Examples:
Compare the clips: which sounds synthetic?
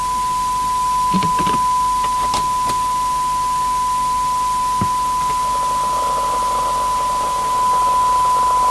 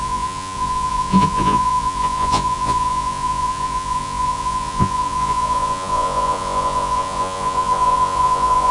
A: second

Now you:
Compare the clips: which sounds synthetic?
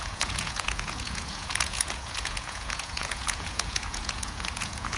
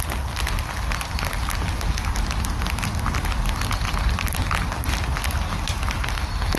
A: first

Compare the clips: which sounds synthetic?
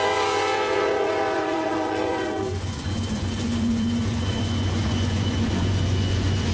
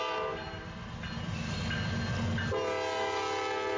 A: first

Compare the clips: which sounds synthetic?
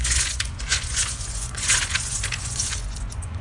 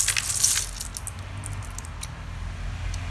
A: first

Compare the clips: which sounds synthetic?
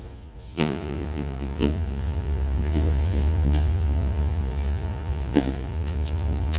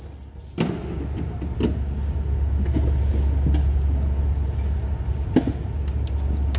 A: first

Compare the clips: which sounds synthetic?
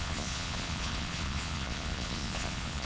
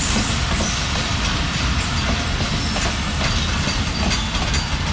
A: first